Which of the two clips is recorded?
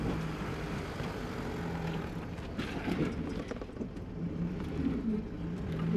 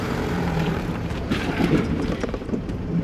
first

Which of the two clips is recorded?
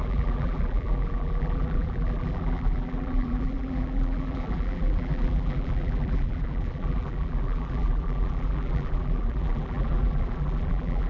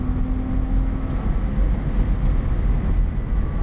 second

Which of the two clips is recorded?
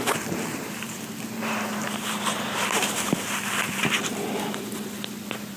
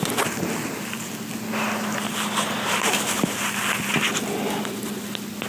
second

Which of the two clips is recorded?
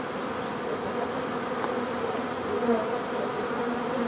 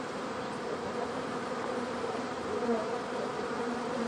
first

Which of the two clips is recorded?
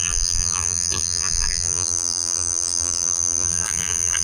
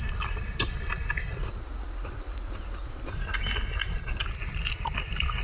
second